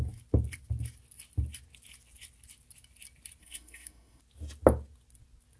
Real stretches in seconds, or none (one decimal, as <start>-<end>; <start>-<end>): 0.0-3.4; 4.2-5.6